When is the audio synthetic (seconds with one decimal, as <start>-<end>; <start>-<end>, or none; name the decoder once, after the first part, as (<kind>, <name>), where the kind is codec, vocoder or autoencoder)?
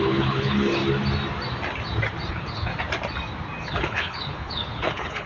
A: 0.0-0.8 (codec, HILCodec); 2.3-2.7; 3.6-5.3